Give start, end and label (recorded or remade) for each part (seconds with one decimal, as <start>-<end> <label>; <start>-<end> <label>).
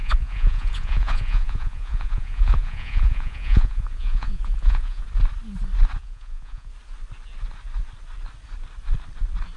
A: 0.0-5.0 remade; 5.0-6.0 recorded; 6.0-6.7 remade; 6.7-9.6 recorded